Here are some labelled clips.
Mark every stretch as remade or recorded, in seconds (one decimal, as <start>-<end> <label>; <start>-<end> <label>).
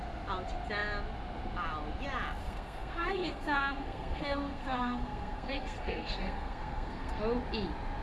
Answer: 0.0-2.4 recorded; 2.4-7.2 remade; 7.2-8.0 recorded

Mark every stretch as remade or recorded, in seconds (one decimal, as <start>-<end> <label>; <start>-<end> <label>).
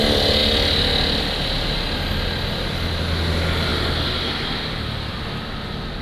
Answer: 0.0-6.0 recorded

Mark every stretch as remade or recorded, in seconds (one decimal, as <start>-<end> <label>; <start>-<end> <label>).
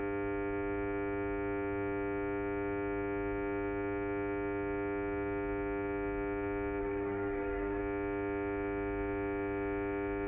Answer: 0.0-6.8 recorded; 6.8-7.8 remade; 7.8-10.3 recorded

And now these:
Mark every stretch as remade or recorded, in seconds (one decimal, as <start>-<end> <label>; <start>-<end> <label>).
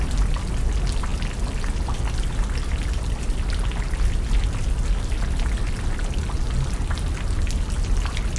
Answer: 0.0-8.4 recorded